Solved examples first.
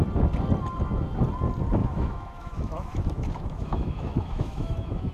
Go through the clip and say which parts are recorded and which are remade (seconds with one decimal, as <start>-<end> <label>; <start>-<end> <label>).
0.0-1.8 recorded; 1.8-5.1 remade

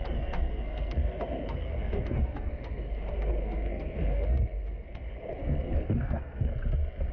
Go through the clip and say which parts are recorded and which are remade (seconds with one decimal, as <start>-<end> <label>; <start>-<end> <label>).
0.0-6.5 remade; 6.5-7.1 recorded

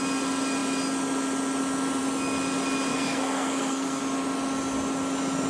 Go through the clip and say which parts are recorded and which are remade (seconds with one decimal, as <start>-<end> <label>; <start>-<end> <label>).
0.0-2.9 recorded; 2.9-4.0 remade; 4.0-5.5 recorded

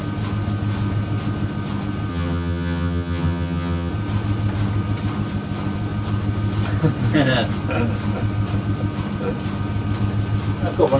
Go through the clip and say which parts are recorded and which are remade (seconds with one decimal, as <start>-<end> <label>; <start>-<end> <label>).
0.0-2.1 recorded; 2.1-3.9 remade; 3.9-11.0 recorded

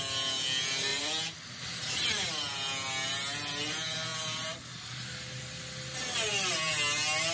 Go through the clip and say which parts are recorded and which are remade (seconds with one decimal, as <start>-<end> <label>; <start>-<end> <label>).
0.0-7.3 recorded

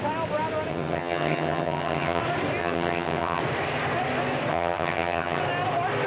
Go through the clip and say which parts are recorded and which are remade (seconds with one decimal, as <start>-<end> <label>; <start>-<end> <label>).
0.0-0.7 recorded; 0.7-2.2 remade; 2.2-2.6 recorded; 2.6-3.4 remade; 3.4-4.5 recorded; 4.5-5.4 remade; 5.4-6.1 recorded

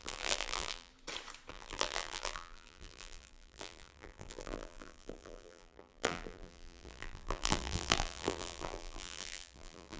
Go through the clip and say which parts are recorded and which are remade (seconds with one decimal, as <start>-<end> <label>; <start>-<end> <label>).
0.0-0.9 remade; 0.9-1.5 recorded; 1.5-10.0 remade

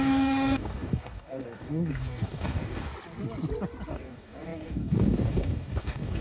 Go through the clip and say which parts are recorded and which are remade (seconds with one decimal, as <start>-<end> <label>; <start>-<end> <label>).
0.0-2.9 remade; 2.9-3.9 recorded; 3.9-6.2 remade